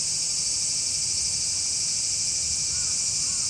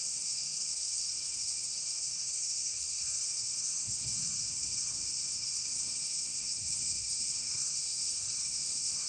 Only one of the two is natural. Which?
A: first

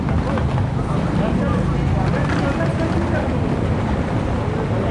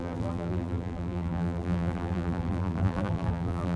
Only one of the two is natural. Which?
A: first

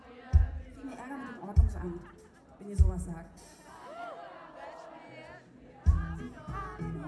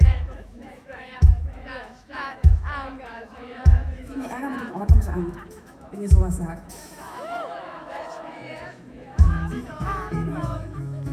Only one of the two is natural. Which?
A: first